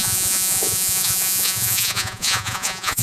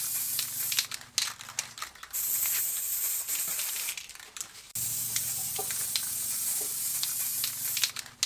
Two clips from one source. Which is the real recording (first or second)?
second